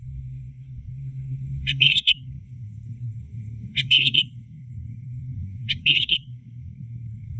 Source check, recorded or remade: remade